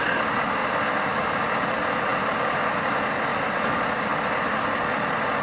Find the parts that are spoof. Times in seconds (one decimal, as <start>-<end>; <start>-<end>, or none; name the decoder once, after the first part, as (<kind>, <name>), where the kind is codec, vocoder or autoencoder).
3.3-4.2 (vocoder, BigVGAN v2)